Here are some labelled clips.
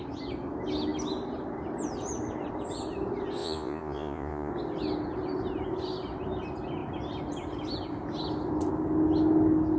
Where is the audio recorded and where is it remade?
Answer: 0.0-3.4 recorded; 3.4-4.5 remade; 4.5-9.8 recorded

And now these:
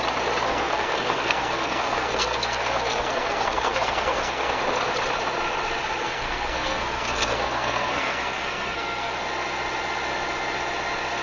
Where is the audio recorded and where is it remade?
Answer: 0.0-0.5 recorded; 0.5-4.6 remade; 4.6-6.0 recorded; 6.0-9.1 remade; 9.1-11.2 recorded

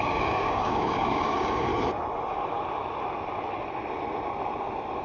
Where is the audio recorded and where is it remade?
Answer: 0.0-1.7 remade; 1.7-5.0 recorded

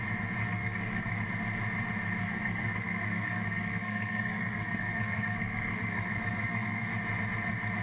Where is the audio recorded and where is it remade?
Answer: 0.0-0.4 recorded; 0.4-1.2 remade; 1.2-2.2 recorded; 2.2-6.9 remade; 6.9-7.8 recorded

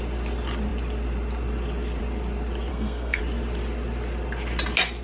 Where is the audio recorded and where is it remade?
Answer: 0.0-2.7 recorded; 2.7-3.2 remade; 3.2-5.0 recorded

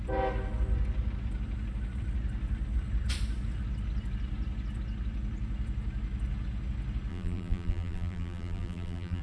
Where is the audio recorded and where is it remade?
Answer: 0.0-7.1 recorded; 7.1-9.2 remade